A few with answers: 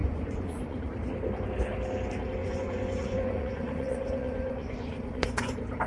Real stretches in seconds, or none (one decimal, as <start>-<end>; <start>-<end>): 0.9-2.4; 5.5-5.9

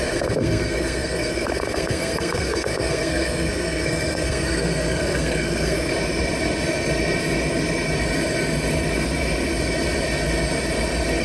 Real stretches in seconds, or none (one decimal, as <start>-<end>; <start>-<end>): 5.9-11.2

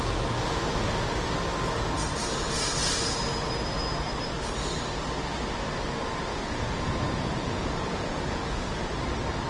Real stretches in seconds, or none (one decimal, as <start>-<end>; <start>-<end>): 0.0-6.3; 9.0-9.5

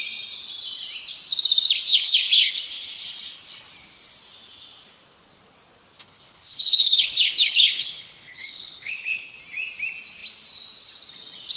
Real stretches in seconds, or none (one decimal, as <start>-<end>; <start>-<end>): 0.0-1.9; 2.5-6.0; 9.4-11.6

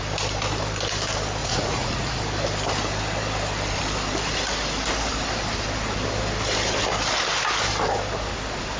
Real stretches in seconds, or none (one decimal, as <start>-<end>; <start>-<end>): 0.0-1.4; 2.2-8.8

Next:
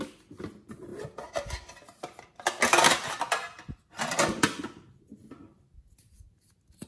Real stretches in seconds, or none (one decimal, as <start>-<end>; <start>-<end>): 0.0-6.9

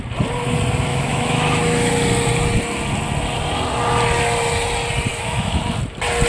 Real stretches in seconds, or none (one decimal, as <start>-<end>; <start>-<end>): 0.0-0.9; 1.9-5.1; 5.6-6.3

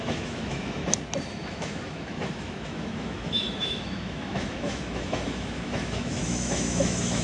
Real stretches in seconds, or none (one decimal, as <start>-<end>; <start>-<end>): 0.8-1.3